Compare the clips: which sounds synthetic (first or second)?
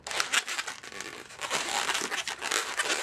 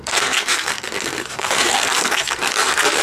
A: second